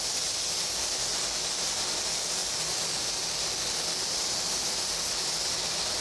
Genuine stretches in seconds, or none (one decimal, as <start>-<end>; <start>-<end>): 0.0-6.0